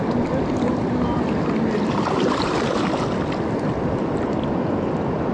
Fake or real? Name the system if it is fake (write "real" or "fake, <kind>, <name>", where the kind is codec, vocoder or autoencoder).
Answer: real